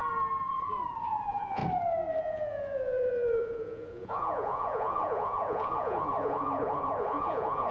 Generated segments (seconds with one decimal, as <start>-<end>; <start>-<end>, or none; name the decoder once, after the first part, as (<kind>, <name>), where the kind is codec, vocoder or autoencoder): 1.0-1.6 (vocoder, Vocos); 2.2-7.7